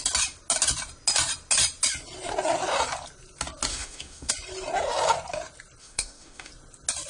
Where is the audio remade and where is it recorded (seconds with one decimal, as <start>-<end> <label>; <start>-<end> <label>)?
0.0-3.7 recorded; 3.7-4.3 remade; 4.3-5.8 recorded; 5.8-6.5 remade; 6.5-7.1 recorded

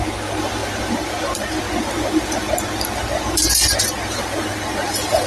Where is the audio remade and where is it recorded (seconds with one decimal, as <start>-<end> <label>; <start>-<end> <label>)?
0.0-5.3 recorded